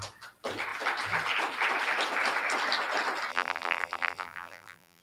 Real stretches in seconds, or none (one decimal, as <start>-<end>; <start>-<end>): 0.0-3.3